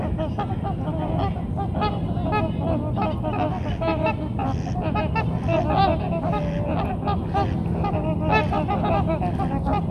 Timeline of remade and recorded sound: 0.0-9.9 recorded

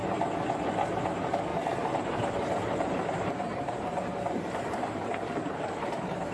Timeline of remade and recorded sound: 0.0-1.0 recorded; 1.0-6.3 remade